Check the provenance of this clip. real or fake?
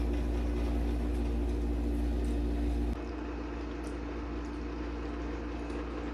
real